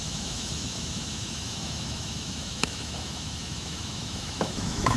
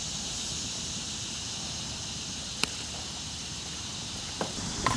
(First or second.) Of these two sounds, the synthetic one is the first